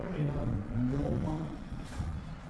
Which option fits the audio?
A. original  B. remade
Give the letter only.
B